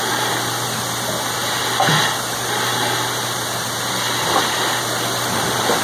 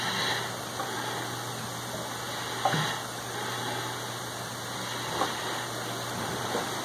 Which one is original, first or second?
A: second